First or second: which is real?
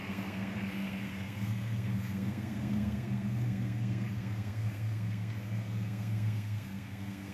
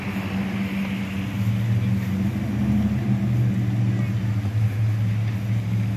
second